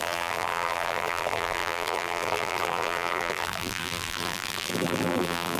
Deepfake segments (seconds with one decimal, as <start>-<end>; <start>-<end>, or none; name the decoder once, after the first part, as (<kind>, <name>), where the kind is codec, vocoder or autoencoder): 0.0-5.6 (vocoder, BigVGAN v2)